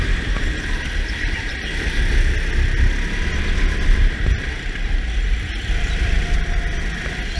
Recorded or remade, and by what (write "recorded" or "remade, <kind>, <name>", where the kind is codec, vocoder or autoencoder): recorded